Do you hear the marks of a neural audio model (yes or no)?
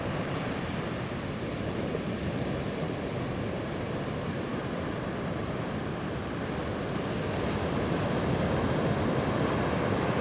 no